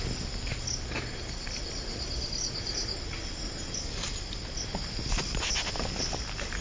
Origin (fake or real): real